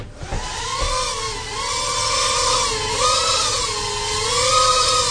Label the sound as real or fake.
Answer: real